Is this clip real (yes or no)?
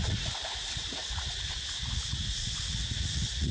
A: no